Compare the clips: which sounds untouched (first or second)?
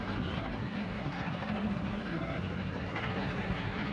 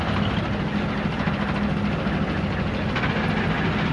second